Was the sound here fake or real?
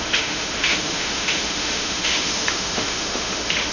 fake